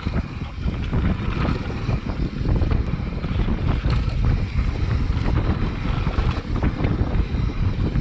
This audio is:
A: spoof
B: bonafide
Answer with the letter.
B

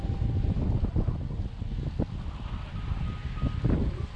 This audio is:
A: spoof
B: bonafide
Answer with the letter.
B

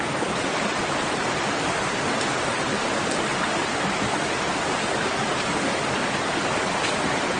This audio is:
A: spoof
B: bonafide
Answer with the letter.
B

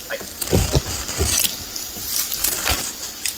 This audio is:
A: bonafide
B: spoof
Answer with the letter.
A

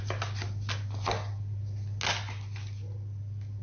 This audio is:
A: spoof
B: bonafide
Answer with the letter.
B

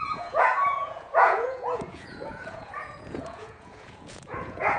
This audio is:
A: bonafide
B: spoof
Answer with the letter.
B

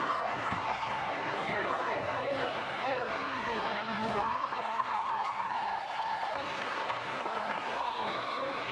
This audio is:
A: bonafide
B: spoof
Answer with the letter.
B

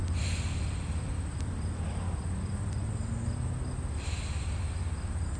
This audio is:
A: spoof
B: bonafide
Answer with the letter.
B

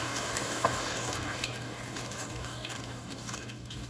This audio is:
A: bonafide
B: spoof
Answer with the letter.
B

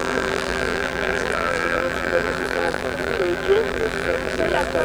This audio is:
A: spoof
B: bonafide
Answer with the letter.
A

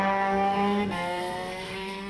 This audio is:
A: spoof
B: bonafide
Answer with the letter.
A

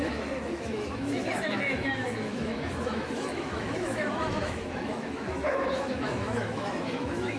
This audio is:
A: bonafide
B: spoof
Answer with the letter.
B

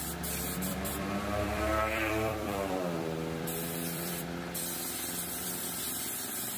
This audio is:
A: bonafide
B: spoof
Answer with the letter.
B